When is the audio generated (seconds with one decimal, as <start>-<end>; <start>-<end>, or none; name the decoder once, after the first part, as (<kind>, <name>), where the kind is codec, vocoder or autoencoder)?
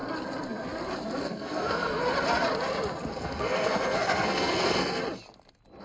1.2-2.0 (codec, SNAC); 3.1-5.0